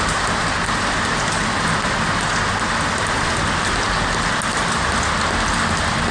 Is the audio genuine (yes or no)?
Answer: yes